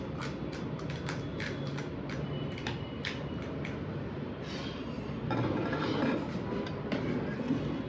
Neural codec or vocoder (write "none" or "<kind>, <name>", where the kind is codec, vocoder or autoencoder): none